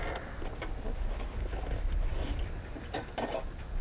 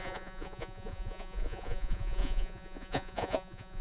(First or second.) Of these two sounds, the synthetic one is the second